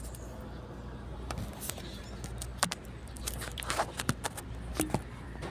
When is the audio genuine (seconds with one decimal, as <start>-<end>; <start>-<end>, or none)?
0.0-1.1; 2.0-2.5; 4.5-5.5